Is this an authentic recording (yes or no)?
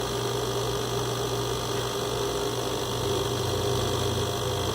yes